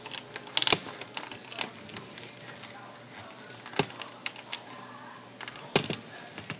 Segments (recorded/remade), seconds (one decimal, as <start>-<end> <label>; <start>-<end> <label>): 0.0-6.6 recorded